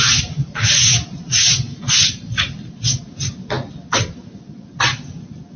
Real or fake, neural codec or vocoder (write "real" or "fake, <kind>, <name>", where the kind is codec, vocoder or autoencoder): real